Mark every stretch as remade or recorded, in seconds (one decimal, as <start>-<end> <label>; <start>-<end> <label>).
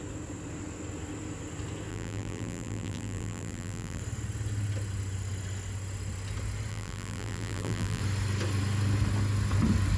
0.0-1.9 recorded; 1.9-4.0 remade; 4.0-6.7 recorded; 6.7-8.0 remade; 8.0-10.0 recorded